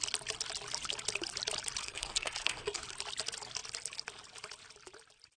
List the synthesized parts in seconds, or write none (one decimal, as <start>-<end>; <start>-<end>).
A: 1.8-2.8